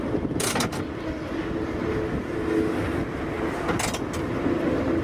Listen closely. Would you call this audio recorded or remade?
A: recorded